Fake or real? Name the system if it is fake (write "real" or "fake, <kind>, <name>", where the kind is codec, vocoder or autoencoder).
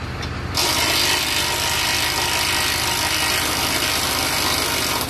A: real